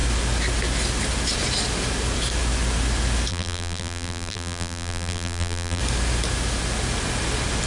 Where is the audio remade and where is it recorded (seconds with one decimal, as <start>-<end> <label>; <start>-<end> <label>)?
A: 0.0-3.3 recorded; 3.3-5.8 remade; 5.8-7.7 recorded